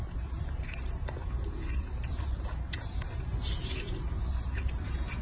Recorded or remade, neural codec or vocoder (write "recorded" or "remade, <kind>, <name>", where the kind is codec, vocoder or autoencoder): remade, vocoder, BigVGAN v2